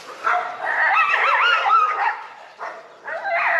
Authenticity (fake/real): real